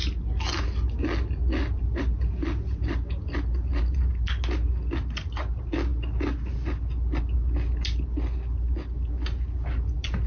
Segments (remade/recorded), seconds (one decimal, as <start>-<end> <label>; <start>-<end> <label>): 0.0-3.6 recorded; 3.6-4.1 remade; 4.1-10.3 recorded